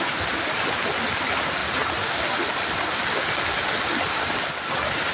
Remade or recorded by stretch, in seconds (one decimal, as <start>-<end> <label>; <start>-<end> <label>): 0.0-5.1 recorded